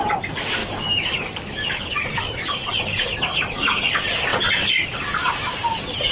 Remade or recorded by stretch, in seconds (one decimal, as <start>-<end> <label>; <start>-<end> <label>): 0.0-0.6 recorded; 0.6-2.7 remade; 2.7-3.3 recorded; 3.3-3.9 remade; 3.9-6.1 recorded